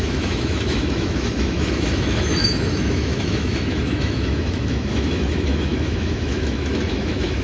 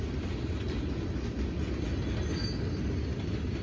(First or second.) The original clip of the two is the second